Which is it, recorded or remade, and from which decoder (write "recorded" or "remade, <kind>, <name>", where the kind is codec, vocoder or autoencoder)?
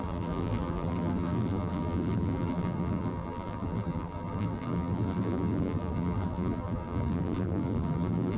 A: remade, vocoder, BigVGAN v2